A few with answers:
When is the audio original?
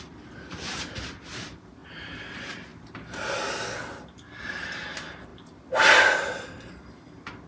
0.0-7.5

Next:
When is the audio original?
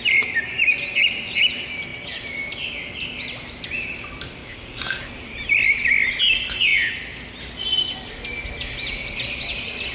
0.0-4.4; 5.1-9.9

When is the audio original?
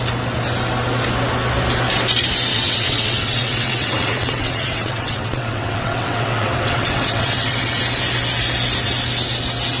0.0-2.5; 7.8-9.8